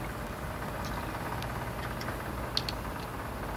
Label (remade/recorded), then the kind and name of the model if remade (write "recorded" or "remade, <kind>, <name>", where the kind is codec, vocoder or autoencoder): recorded